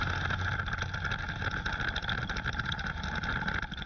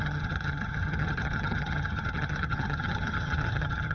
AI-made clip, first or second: second